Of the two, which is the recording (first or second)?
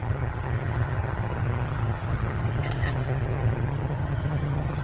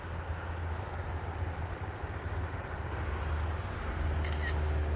second